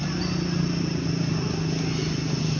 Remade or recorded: recorded